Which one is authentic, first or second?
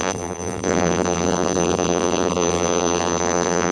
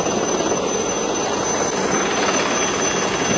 second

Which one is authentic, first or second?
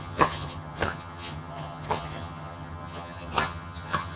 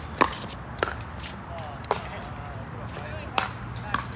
second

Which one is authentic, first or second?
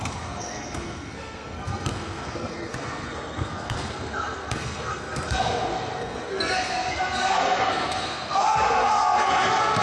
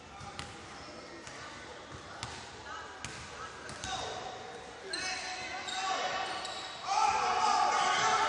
second